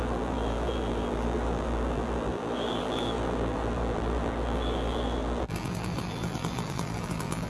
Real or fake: fake